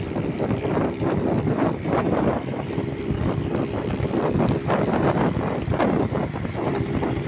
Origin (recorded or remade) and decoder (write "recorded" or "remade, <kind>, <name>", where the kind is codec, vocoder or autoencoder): remade, vocoder, BigVGAN v2